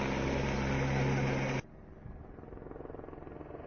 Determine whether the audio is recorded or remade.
recorded